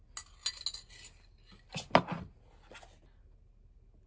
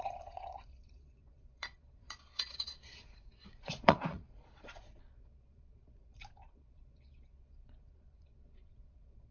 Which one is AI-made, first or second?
second